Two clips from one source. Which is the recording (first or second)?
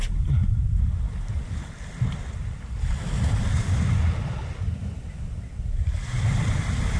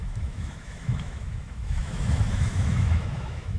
first